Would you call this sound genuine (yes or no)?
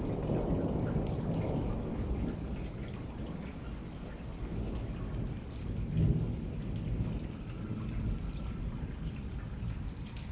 yes